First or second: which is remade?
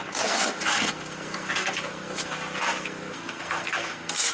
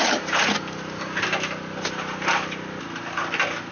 first